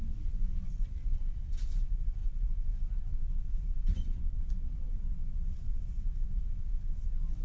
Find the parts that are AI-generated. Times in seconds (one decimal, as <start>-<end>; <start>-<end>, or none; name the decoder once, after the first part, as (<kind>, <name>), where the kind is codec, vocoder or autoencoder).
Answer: 0.0-7.4 (vocoder, WaveNeXt)